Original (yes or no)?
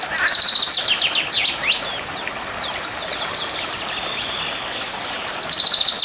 yes